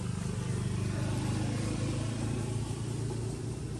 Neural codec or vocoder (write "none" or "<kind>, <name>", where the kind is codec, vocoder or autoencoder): none